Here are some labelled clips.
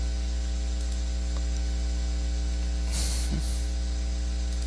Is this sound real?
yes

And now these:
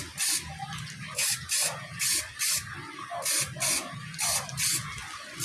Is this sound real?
yes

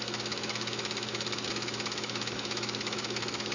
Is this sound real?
no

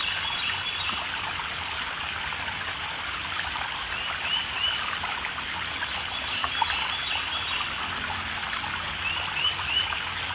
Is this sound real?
yes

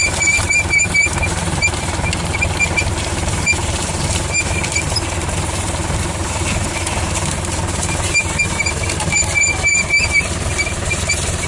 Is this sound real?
no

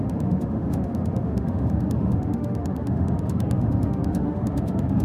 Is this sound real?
no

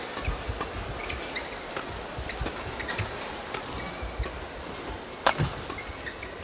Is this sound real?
yes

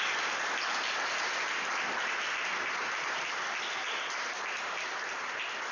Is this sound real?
yes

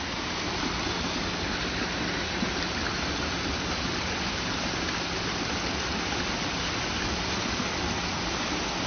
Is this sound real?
yes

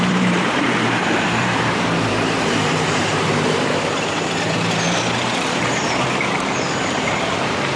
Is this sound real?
no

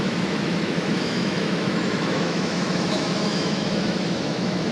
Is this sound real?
no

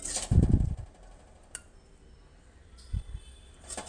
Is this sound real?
yes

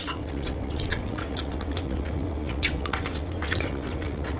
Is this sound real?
no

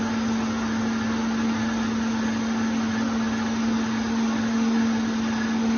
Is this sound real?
yes